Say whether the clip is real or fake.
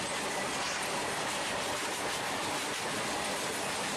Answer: real